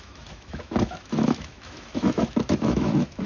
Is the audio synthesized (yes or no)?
yes